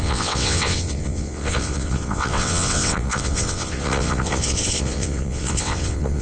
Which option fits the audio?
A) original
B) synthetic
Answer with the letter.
B